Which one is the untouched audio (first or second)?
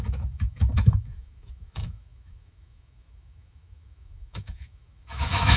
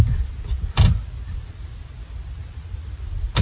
second